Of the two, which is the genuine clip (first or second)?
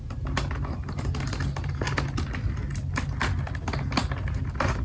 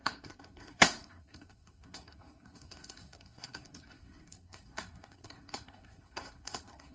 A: first